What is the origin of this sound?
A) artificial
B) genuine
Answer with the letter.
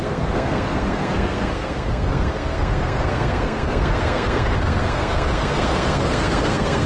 A